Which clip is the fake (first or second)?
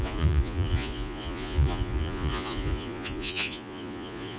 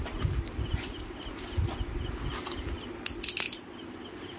first